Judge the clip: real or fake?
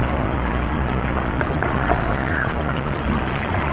fake